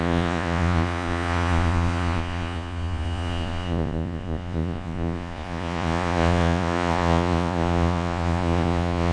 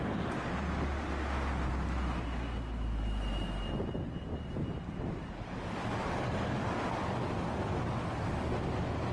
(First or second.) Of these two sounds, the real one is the second